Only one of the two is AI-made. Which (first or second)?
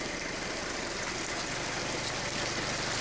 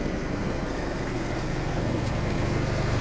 second